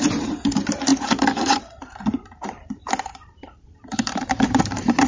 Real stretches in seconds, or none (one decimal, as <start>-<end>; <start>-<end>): none